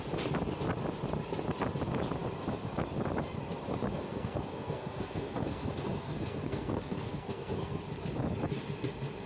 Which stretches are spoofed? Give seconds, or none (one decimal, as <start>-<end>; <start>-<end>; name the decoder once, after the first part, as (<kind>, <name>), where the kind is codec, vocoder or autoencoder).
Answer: 4.1-7.8 (codec, SNAC)